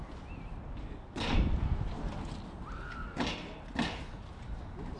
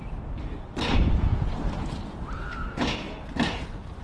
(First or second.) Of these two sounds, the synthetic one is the second